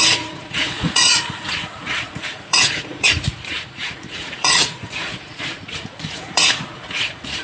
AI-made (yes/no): yes